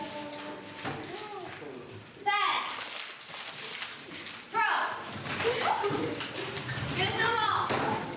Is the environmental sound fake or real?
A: real